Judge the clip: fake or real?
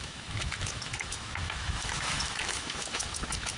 fake